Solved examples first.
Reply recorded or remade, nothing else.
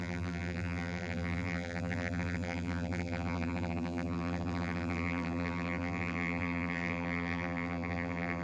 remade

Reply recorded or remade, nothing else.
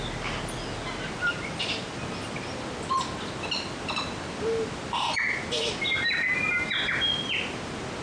recorded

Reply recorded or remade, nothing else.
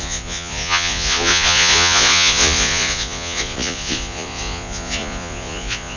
remade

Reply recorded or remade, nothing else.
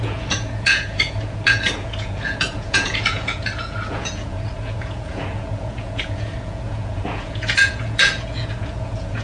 remade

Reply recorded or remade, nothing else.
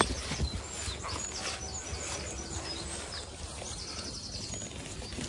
recorded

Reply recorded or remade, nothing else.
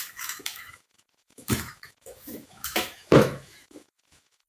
remade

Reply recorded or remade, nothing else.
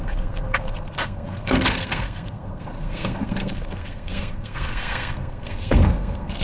remade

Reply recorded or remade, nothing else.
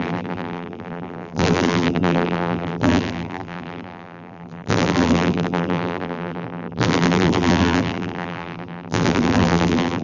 remade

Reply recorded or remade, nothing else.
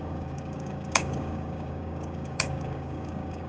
remade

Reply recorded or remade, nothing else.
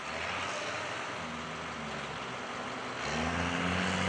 recorded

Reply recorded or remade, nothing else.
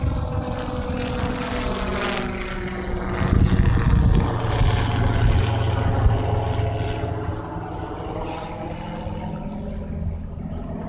recorded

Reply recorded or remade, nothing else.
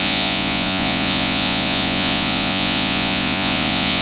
remade